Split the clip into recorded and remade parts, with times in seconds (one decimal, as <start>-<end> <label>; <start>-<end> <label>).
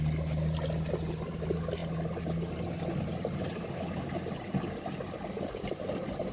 0.0-6.3 recorded